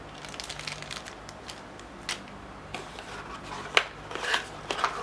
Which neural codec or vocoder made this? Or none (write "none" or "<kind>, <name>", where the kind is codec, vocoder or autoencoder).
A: none